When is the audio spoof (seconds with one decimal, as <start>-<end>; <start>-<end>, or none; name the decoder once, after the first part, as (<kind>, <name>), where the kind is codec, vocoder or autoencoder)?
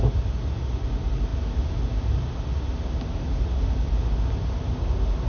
none